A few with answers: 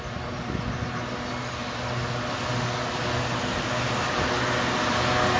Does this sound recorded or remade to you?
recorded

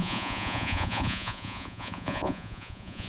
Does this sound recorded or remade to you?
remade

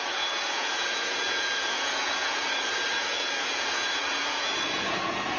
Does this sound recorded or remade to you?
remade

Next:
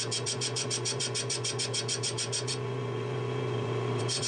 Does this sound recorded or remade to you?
remade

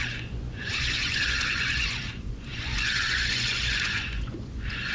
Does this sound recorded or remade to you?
remade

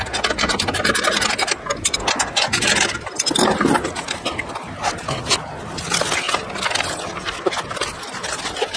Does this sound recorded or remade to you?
recorded